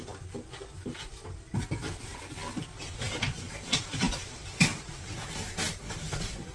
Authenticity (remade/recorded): remade